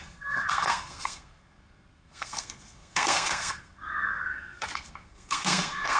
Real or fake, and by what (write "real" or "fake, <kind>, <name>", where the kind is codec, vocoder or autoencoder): fake, codec, SNAC